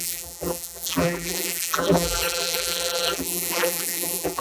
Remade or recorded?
remade